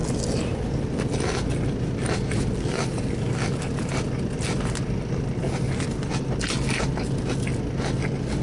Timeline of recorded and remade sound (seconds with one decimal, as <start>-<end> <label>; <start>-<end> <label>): 0.0-8.4 recorded